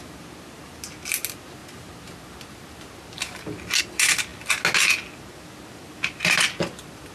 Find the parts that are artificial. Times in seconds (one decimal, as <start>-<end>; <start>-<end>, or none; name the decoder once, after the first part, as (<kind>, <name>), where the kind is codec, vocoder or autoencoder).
none